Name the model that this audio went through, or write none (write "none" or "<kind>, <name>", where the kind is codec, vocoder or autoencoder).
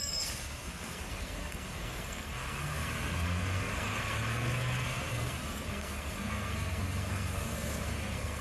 codec, SNAC